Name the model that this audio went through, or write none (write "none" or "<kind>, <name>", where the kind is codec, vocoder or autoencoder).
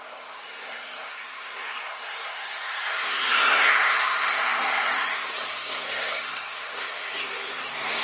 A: codec, SNAC